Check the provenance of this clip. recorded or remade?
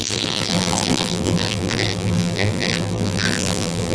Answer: remade